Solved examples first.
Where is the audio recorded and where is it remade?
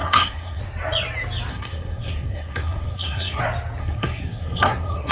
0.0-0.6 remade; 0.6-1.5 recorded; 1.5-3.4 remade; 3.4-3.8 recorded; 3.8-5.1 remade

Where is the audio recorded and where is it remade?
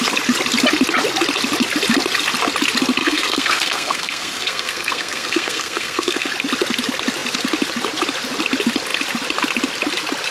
0.0-3.0 recorded; 3.0-6.3 remade; 6.3-10.3 recorded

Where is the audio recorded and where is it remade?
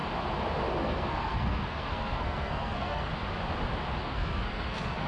0.0-0.8 recorded; 0.8-3.1 remade; 3.1-4.0 recorded; 4.0-5.1 remade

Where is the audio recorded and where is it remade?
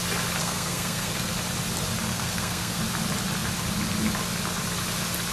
0.0-0.4 recorded; 0.4-1.3 remade; 1.3-2.1 recorded; 2.1-2.8 remade; 2.8-5.3 recorded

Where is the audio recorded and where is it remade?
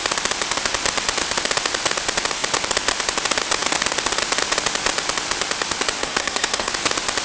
0.0-6.0 recorded; 6.0-6.7 remade; 6.7-7.2 recorded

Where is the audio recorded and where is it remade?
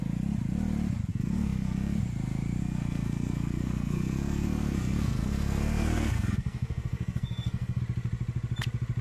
0.0-1.1 recorded; 1.1-2.0 remade; 2.0-2.6 recorded; 2.6-7.8 remade; 7.8-9.0 recorded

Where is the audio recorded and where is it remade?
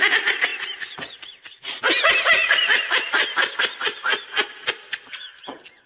0.0-5.9 recorded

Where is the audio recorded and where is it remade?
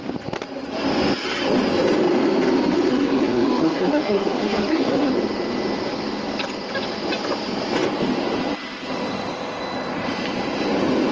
0.0-2.9 recorded; 2.9-5.1 remade; 5.1-11.1 recorded